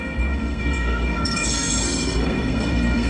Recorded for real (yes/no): no